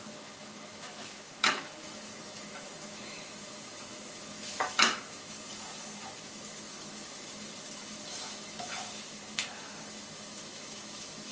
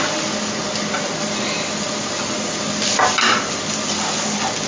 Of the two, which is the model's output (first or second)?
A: first